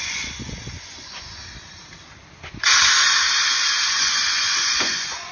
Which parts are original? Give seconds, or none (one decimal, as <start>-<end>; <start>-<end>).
1.4-3.9